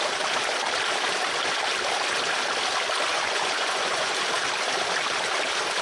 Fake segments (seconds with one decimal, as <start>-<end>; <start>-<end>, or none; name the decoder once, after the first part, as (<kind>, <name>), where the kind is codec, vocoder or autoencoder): 3.1-4.1 (vocoder, Vocos)